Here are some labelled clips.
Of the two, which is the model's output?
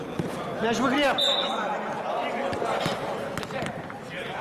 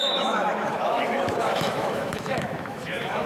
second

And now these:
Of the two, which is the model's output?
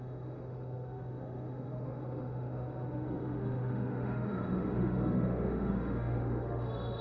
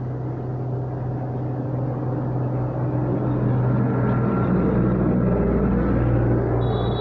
first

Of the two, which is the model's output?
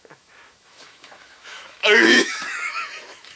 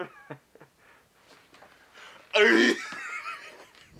first